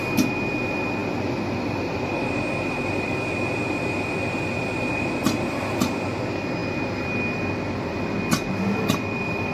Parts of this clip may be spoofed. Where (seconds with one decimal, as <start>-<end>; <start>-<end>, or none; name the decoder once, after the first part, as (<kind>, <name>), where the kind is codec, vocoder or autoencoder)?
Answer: none